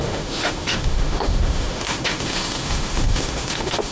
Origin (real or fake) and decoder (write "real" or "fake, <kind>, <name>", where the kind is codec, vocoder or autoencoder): fake, autoencoder, DAC-VAE